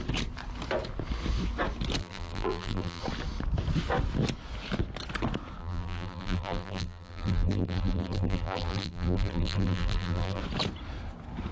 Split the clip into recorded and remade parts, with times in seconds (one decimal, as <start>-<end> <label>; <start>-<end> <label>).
0.0-2.0 recorded; 2.0-3.0 remade; 3.0-5.6 recorded; 5.6-10.4 remade; 10.4-11.5 recorded